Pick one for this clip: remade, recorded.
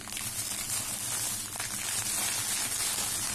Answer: recorded